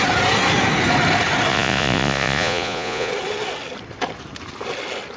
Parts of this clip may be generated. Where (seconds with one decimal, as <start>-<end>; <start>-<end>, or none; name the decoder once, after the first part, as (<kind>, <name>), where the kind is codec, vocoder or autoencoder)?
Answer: 1.5-3.1 (vocoder, Vocos)